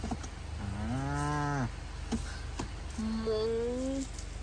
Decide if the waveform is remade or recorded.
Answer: recorded